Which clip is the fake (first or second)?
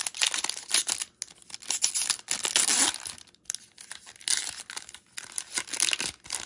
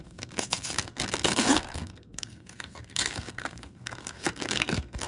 second